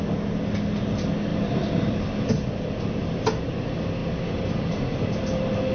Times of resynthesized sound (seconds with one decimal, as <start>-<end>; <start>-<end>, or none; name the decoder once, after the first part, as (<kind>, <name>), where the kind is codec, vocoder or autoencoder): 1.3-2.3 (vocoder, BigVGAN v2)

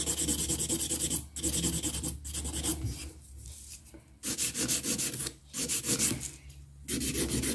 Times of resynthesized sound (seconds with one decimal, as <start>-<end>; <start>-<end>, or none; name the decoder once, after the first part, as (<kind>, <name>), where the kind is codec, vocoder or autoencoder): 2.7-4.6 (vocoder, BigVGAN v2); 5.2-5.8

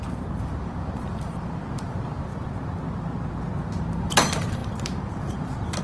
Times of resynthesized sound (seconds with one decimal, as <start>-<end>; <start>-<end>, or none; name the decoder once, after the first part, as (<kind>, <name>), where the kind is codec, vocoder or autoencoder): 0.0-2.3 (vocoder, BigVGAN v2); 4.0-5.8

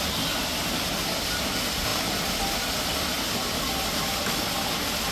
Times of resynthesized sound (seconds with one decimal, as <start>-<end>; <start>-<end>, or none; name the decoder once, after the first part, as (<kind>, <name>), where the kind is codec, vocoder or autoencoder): none

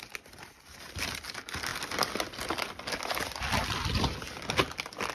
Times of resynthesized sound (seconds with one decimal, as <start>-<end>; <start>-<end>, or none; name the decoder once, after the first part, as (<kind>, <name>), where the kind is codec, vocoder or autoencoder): none

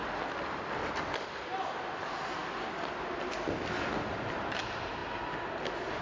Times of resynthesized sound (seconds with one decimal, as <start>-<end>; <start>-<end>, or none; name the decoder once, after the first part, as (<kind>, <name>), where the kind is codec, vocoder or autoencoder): none

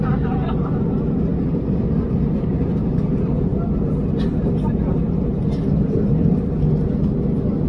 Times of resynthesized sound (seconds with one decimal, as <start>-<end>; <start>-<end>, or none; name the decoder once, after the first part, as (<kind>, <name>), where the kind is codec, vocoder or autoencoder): 1.3-3.5 (vocoder, BigVGAN v2)